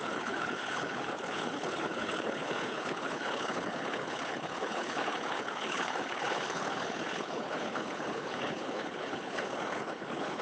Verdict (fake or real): fake